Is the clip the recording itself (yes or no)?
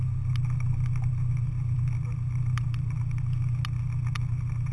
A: yes